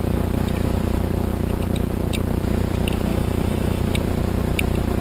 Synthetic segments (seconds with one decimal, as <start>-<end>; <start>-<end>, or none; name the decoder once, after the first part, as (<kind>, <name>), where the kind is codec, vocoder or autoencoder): 3.1-3.8 (autoencoder, DAC-VAE)